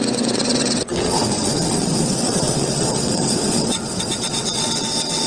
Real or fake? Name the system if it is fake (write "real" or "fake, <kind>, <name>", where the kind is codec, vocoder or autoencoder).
fake, vocoder, WaveNeXt